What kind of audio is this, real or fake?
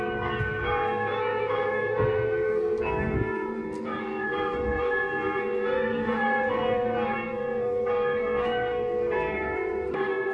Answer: fake